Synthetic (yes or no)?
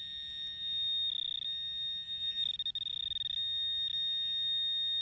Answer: no